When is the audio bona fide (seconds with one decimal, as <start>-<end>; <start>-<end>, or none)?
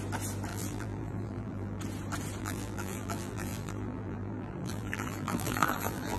0.0-0.5; 1.8-2.4